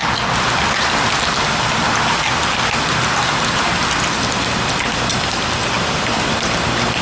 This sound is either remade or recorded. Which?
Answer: recorded